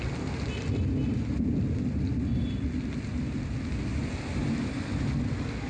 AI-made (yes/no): no